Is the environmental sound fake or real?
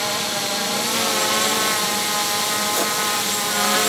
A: real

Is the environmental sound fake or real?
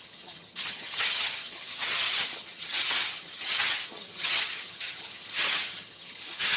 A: fake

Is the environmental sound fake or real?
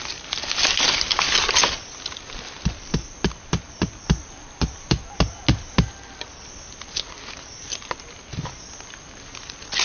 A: real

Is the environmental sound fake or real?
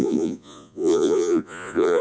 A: fake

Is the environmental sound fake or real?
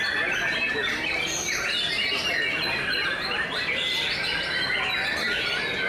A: real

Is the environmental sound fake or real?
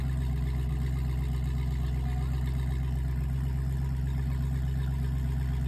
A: real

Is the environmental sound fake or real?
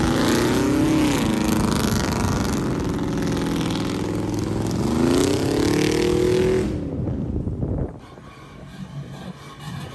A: real